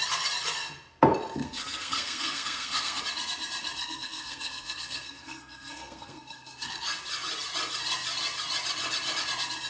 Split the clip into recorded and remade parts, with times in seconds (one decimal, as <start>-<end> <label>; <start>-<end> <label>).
0.0-1.4 recorded; 1.4-3.0 remade; 3.0-3.8 recorded; 3.8-6.7 remade; 6.7-9.7 recorded

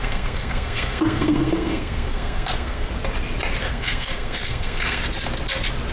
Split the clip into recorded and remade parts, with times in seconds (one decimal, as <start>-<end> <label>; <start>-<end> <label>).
0.0-2.9 remade; 2.9-3.6 recorded; 3.6-5.0 remade; 5.0-5.9 recorded

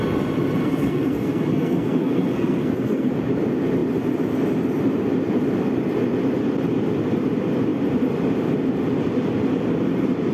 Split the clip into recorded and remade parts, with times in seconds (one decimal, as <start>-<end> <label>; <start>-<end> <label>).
0.0-0.6 recorded; 0.6-3.1 remade; 3.1-10.3 recorded

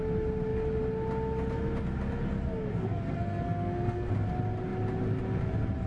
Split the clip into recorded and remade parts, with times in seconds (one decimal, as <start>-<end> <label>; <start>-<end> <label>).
0.0-2.7 recorded; 2.7-4.1 remade; 4.1-5.9 recorded

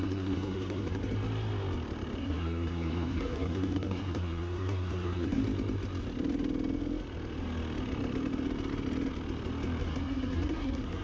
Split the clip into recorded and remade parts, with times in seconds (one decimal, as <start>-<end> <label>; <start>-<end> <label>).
0.0-1.0 remade; 1.0-2.2 recorded; 2.2-5.4 remade; 5.4-9.8 recorded; 9.8-11.0 remade

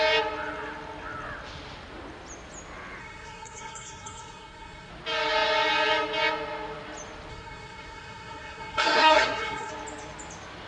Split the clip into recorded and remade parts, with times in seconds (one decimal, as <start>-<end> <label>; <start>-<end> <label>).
0.0-3.0 recorded; 3.0-4.9 remade; 4.9-7.3 recorded; 7.3-9.7 remade; 9.7-10.7 recorded

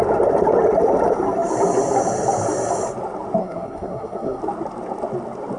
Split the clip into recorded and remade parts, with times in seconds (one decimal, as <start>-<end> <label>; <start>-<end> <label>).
0.0-3.4 recorded; 3.4-4.4 remade; 4.4-5.6 recorded

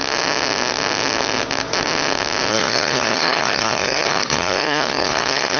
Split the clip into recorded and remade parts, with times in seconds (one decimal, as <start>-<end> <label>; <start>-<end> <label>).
0.0-2.5 recorded; 2.5-5.6 remade